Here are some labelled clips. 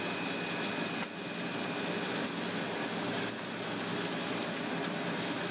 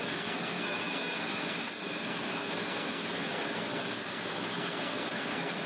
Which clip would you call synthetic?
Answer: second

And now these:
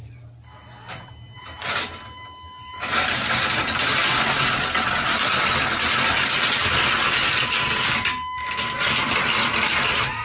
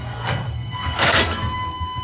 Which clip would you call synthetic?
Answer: second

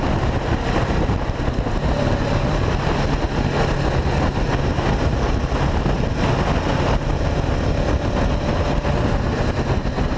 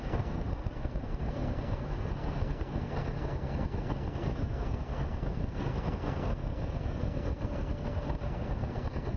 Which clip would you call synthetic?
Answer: second